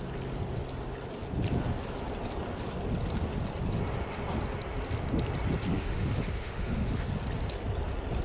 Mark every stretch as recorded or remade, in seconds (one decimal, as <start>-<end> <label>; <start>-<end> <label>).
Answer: 0.0-5.7 recorded; 5.7-7.1 remade; 7.1-8.2 recorded